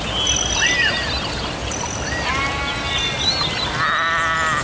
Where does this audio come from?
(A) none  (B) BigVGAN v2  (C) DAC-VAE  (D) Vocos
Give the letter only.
A